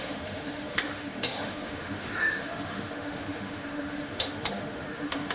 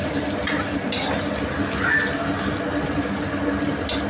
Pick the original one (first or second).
second